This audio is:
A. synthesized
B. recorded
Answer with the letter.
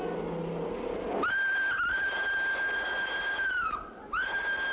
B